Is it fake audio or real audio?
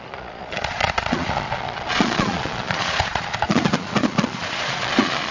fake